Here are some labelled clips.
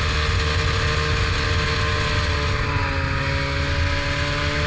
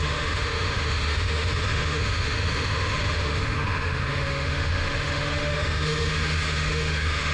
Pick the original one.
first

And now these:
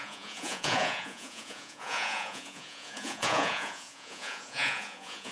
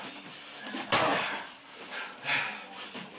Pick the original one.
second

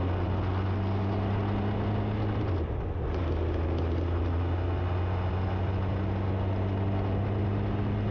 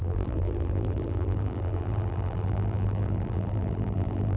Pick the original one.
first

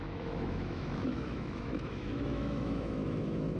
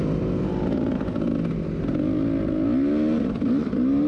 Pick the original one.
second